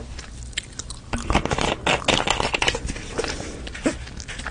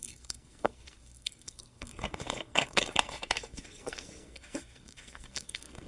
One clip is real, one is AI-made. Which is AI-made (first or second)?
second